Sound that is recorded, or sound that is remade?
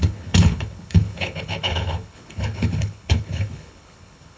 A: remade